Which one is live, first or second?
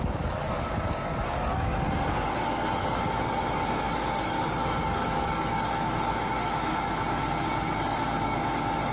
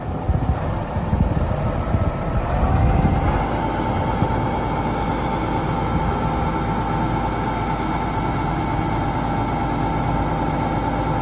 second